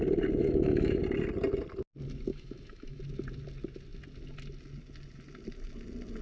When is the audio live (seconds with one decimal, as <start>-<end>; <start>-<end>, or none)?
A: 0.0-0.4; 1.0-2.3; 3.0-6.2